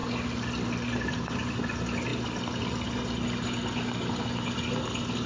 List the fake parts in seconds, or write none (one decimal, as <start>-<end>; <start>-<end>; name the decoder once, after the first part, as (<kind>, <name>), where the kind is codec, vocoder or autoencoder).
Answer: none